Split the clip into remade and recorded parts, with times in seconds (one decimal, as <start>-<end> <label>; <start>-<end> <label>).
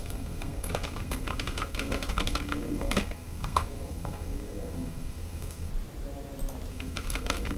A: 0.0-5.7 remade; 5.7-6.7 recorded; 6.7-7.6 remade